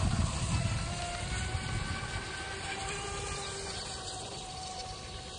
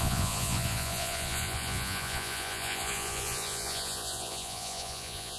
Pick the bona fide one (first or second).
first